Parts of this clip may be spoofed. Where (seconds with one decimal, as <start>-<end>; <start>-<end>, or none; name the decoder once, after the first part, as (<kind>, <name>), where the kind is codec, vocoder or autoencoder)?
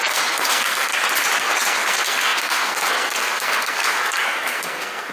0.0-0.9 (codec, SNAC); 1.4-5.1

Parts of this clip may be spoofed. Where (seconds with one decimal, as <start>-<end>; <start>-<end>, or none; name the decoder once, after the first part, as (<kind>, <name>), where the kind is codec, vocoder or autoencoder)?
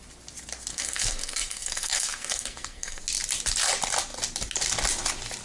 0.7-3.0 (codec, SNAC)